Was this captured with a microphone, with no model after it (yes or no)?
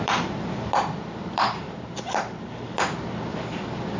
no